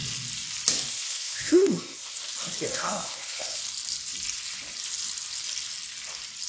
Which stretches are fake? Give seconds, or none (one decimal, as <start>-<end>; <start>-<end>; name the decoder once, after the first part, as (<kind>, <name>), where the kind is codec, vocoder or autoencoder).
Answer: 0.9-2.2 (codec, ZipCodec); 2.7-3.6